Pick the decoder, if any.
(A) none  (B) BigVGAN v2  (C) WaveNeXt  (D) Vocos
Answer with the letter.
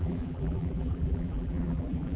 B